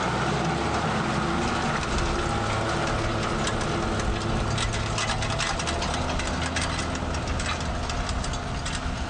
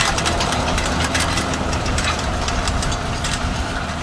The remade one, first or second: second